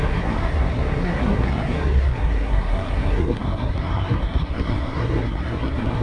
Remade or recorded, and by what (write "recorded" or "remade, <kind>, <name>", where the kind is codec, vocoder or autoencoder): remade, codec, SNAC